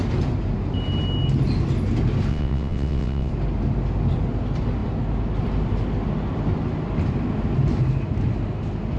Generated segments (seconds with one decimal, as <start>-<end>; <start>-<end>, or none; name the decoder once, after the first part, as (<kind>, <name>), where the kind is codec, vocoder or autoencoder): 2.3-3.3 (vocoder, WaveNeXt)